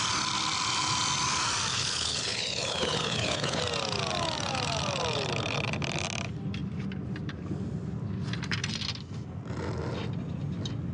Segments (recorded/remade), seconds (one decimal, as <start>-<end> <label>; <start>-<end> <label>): 0.0-1.7 recorded; 1.7-3.6 remade; 3.6-10.9 recorded

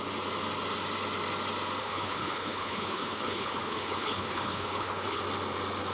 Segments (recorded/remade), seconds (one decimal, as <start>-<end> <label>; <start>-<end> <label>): 0.0-1.8 recorded; 1.8-5.2 remade; 5.2-5.9 recorded